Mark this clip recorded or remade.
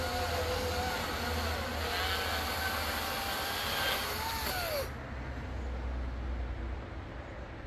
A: recorded